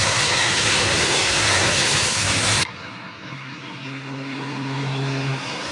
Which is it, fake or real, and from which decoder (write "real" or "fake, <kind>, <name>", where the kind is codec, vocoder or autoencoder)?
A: fake, codec, SNAC